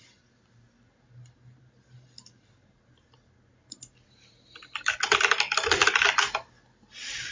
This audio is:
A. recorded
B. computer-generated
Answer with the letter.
A